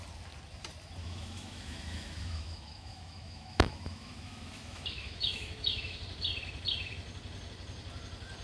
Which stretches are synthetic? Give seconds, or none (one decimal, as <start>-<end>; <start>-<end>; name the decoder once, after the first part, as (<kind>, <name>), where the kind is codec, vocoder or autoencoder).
1.0-6.0 (autoencoder, DAC-VAE)